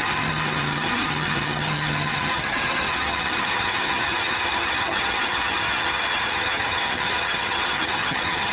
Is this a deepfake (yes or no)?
yes